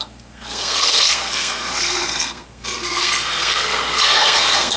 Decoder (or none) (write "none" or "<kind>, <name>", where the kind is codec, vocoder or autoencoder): codec, SNAC